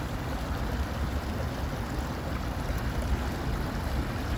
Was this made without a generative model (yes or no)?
yes